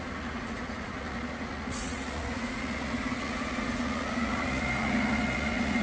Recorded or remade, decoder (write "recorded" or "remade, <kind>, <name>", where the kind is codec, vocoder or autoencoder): remade, vocoder, Vocos